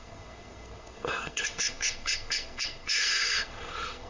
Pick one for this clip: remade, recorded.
remade